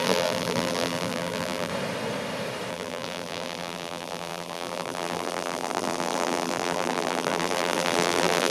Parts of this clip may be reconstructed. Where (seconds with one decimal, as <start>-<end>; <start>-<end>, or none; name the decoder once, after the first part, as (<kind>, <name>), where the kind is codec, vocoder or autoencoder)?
0.0-1.7 (vocoder, BigVGAN v2); 2.7-8.5